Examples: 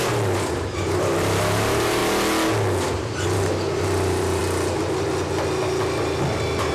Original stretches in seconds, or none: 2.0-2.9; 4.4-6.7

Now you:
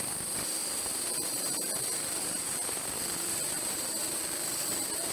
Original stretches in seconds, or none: none

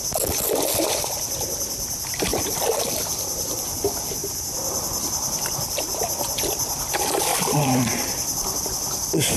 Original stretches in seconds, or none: 0.0-2.3; 3.7-4.2; 5.8-7.3; 8.6-9.4

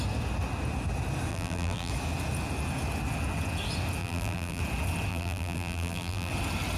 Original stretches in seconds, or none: 0.0-1.3; 1.9-4.0; 4.6-5.1; 6.3-6.8

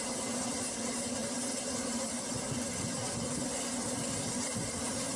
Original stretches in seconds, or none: 0.0-5.2

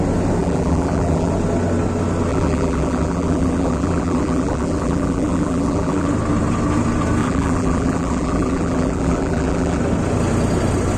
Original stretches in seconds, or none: 0.0-0.4; 1.3-2.3; 6.1-7.2; 9.8-11.0

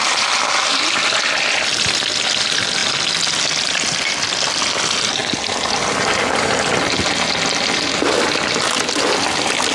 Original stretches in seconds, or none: 0.0-9.7